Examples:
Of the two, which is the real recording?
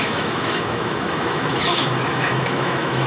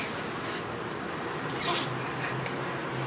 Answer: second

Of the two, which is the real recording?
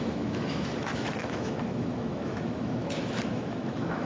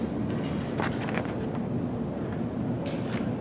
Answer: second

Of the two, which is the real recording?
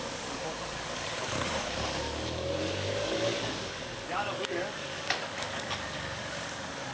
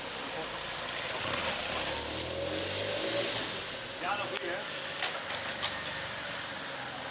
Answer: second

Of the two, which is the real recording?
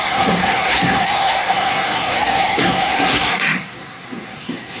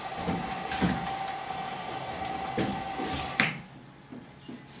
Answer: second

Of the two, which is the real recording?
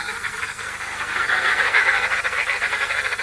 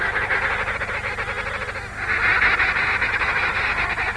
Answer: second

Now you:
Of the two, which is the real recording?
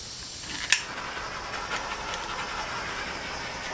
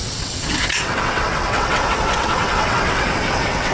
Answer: first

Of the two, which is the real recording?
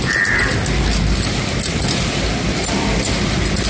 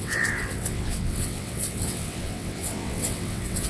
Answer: first